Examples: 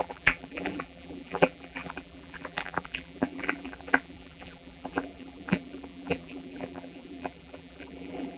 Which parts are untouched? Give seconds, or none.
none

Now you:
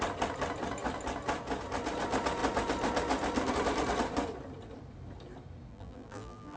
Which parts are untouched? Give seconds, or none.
0.0-5.7

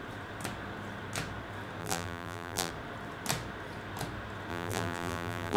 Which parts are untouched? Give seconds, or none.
0.0-1.8; 2.7-4.5

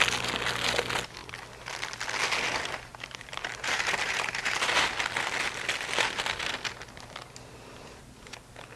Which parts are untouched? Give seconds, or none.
0.0-2.9; 4.9-8.8

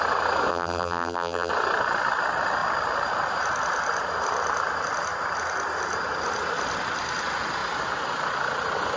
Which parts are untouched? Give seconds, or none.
0.0-0.5; 1.5-9.0